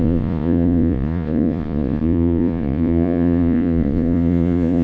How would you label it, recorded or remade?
remade